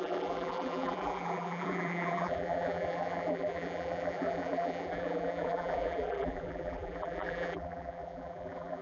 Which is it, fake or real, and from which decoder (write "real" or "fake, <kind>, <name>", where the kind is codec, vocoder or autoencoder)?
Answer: fake, vocoder, BigVGAN v2